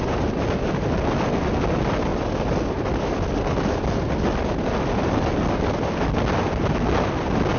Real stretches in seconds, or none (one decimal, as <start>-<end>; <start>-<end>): 0.0-7.6